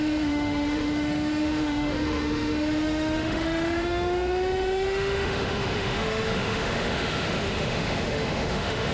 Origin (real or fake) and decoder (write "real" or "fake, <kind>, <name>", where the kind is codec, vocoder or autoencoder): fake, autoencoder, DAC-VAE